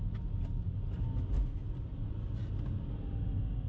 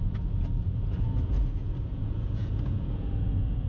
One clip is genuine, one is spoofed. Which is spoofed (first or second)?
second